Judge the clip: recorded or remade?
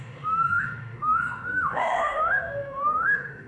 remade